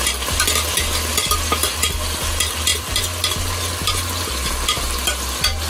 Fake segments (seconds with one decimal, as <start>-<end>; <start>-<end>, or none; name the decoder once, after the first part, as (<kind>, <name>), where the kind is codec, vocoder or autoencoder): none